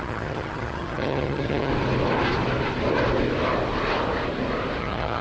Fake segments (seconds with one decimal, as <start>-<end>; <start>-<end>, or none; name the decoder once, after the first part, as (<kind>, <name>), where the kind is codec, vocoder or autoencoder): 0.0-1.7 (vocoder, HiFi-GAN); 4.8-5.2